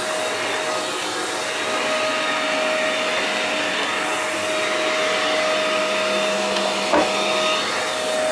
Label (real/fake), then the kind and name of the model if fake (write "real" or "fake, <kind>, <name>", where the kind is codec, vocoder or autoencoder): real